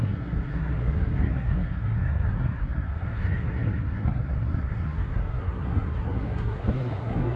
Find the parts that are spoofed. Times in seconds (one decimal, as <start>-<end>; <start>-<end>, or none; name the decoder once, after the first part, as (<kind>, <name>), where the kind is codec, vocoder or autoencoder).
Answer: 0.0-7.4 (codec, SNAC)